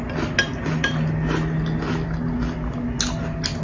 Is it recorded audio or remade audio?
recorded